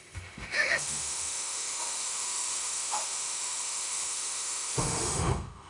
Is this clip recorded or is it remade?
remade